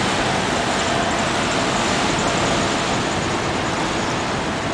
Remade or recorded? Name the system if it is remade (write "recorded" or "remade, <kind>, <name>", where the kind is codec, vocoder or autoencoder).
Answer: recorded